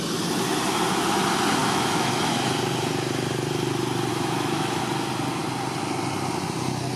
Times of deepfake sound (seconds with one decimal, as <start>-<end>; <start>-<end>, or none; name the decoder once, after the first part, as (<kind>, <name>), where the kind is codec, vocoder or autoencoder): 1.6-2.5 (autoencoder, DAC-VAE); 4.1-4.8